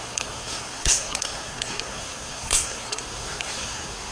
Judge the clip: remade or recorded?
remade